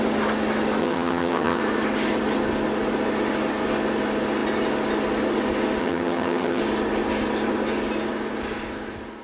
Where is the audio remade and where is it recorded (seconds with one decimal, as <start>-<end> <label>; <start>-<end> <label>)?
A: 0.0-0.8 recorded; 0.8-1.6 remade; 1.6-5.8 recorded; 5.8-6.6 remade; 6.6-9.2 recorded

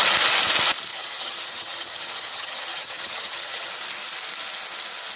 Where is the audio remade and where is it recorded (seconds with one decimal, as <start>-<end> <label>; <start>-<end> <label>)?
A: 0.0-0.9 recorded; 0.9-3.7 remade; 3.7-5.2 recorded

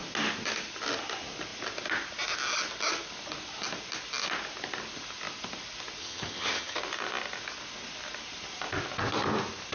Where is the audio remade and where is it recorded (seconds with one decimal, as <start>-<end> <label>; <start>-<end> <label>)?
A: 0.0-6.0 recorded; 6.0-6.8 remade; 6.8-9.7 recorded

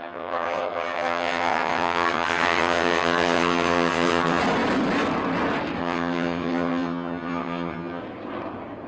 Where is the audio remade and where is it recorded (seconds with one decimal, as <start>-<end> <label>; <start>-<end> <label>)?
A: 0.0-4.4 remade; 4.4-5.8 recorded; 5.8-8.0 remade; 8.0-8.9 recorded

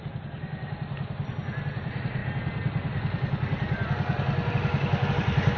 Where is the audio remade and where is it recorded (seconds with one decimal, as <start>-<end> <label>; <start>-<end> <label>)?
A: 0.0-5.6 recorded

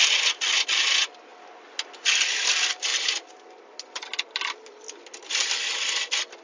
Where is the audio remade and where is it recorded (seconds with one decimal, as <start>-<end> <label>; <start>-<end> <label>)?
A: 0.0-6.4 recorded